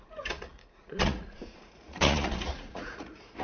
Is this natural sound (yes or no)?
no